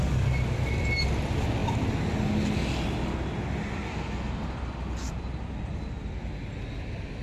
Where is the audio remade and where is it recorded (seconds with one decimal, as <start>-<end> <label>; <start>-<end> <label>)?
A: 0.0-7.2 recorded